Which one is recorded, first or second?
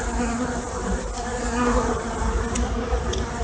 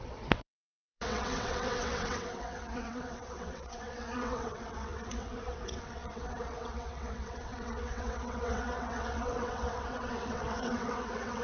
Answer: first